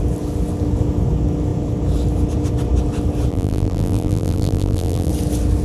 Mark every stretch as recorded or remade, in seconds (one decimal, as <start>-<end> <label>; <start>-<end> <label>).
0.0-3.3 recorded; 3.3-5.1 remade; 5.1-5.6 recorded